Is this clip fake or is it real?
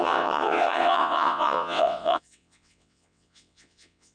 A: fake